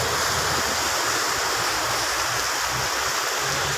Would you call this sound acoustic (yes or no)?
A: yes